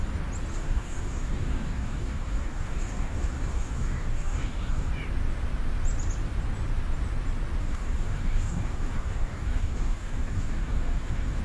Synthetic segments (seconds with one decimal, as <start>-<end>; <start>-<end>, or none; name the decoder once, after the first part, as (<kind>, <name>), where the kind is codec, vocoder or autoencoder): 0.5-4.9 (codec, DAC); 7.6-11.4